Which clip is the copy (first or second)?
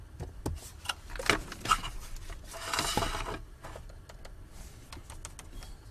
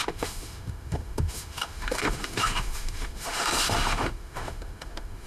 second